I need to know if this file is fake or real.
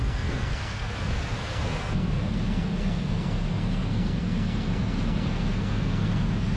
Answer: fake